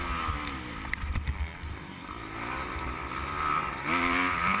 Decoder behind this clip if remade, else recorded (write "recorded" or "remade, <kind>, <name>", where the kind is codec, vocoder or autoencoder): recorded